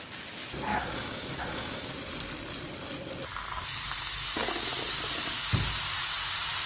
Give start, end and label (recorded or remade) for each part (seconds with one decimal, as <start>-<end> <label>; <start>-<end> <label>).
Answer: 0.0-0.7 recorded; 0.7-1.9 remade; 1.9-6.7 recorded

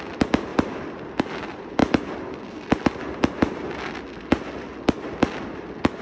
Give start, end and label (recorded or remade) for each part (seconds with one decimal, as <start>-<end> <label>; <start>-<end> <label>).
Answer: 0.0-6.0 recorded

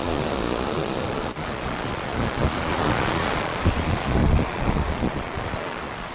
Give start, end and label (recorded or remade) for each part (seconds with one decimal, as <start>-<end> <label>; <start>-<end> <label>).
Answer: 0.0-6.1 remade